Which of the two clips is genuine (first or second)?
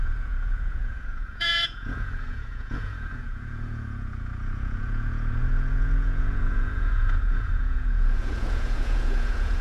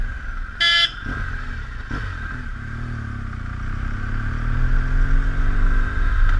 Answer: second